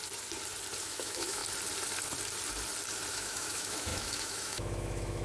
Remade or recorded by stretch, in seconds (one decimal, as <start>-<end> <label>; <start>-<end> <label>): 0.0-0.8 recorded; 0.8-1.4 remade; 1.4-3.1 recorded; 3.1-5.2 remade